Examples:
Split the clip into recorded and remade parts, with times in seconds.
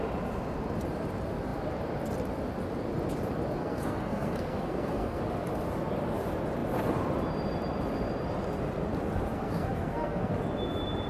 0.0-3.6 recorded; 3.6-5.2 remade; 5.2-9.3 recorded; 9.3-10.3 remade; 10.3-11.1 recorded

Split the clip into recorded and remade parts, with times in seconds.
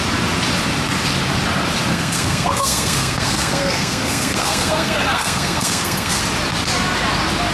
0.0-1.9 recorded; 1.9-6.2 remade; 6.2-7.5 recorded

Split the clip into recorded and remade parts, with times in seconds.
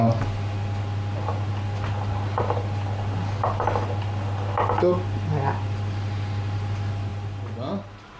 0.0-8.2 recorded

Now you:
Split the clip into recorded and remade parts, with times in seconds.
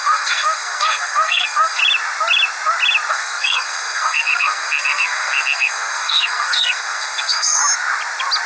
0.0-1.8 remade; 1.8-3.1 recorded; 3.1-7.6 remade; 7.6-8.5 recorded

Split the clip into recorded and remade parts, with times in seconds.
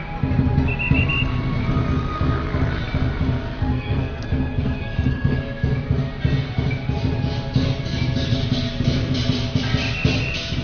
0.0-3.7 recorded; 3.7-5.4 remade; 5.4-10.6 recorded